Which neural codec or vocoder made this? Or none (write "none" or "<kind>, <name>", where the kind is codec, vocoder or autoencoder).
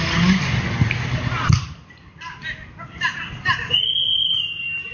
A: none